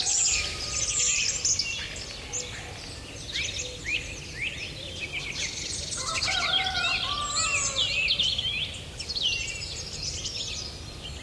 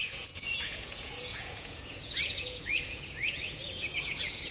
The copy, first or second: second